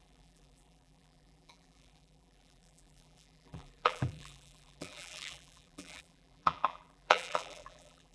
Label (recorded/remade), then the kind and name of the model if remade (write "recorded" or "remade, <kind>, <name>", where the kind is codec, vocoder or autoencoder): remade, vocoder, BigVGAN v2